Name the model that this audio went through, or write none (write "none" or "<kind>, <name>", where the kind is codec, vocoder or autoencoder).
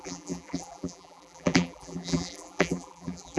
vocoder, BigVGAN v2